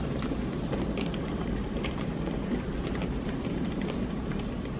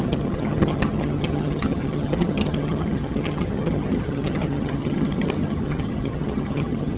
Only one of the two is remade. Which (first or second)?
second